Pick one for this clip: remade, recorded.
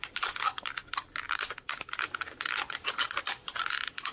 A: remade